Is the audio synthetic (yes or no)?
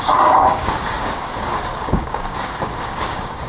yes